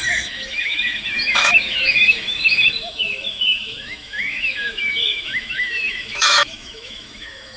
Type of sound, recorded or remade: remade